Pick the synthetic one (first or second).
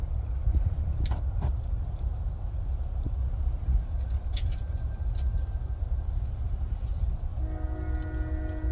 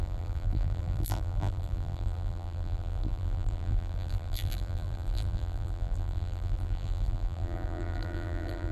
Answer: second